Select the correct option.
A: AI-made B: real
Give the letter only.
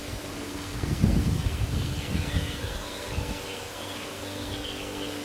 A